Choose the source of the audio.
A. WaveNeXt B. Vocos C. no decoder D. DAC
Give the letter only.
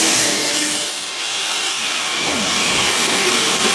D